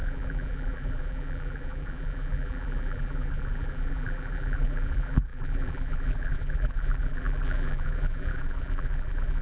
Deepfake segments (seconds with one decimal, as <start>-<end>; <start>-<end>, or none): 0.0-9.4